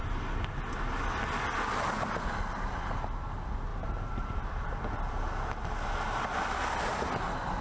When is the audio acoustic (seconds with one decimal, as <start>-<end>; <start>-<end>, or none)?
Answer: 0.0-3.7; 4.9-7.6